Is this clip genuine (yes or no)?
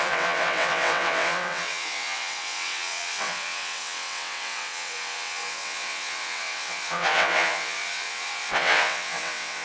no